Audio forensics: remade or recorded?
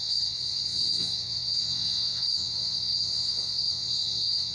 remade